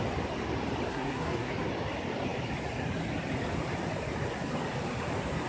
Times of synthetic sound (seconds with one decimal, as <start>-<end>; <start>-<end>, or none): 0.9-1.5